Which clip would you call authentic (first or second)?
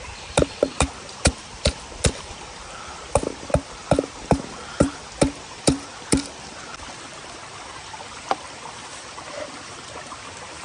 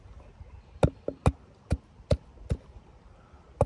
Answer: second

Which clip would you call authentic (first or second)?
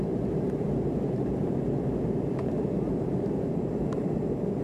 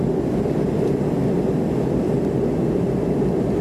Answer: second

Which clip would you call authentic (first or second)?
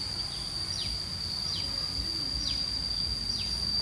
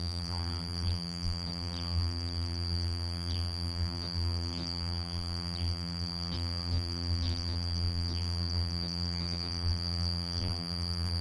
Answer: first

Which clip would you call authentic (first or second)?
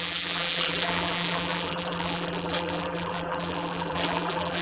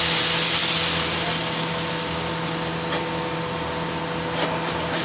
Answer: second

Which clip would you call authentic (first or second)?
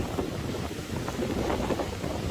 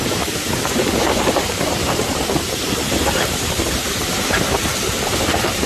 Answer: first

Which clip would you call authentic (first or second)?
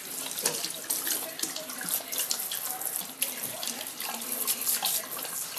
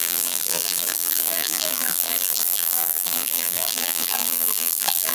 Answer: first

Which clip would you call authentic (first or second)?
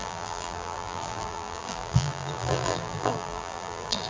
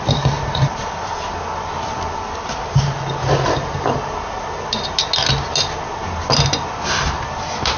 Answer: second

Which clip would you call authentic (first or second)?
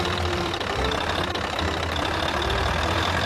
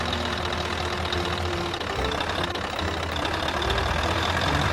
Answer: second